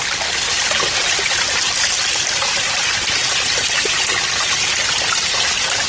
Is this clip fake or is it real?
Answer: real